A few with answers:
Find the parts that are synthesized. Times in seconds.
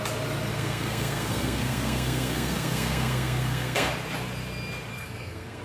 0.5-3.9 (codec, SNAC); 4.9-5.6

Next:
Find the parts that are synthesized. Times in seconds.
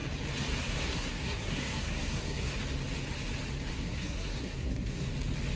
0.6-2.5 (codec, SNAC); 3.7-5.1